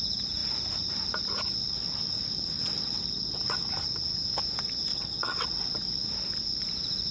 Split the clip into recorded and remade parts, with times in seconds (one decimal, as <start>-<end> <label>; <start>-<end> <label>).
0.0-1.6 recorded; 1.6-3.7 remade; 3.7-4.9 recorded; 4.9-6.1 remade; 6.1-7.1 recorded